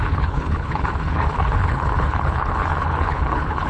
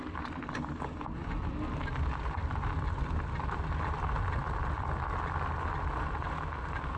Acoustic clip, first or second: second